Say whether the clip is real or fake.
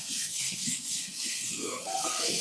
fake